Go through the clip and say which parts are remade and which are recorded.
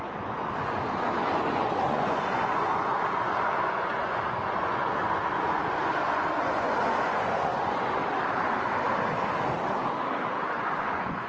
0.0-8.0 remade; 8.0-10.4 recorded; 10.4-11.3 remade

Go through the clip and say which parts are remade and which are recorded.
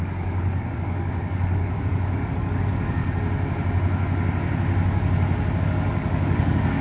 0.0-3.0 remade; 3.0-5.6 recorded; 5.6-6.8 remade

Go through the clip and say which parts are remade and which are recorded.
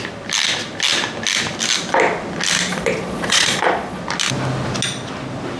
0.0-2.7 recorded; 2.7-4.0 remade; 4.0-5.6 recorded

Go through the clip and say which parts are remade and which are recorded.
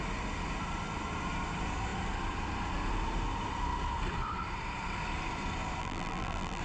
0.0-5.8 recorded; 5.8-6.6 remade